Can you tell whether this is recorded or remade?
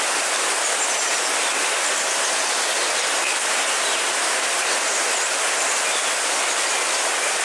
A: recorded